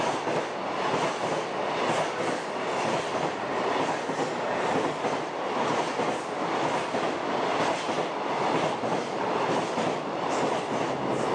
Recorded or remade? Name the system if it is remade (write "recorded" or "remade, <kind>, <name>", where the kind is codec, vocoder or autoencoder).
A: recorded